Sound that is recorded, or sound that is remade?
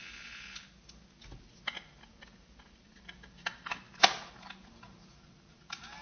recorded